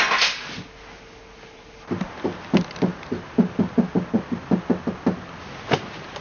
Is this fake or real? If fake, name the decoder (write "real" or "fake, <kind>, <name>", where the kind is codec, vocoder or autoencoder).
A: real